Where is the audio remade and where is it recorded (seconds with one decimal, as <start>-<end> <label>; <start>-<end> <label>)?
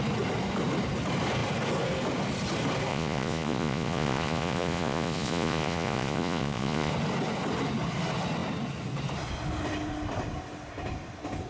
0.0-2.9 recorded; 2.9-6.9 remade; 6.9-11.5 recorded